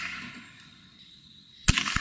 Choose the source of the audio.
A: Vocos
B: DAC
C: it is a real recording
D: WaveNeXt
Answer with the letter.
C